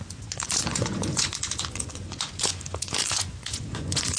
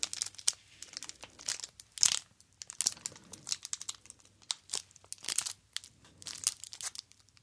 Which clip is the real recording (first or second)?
second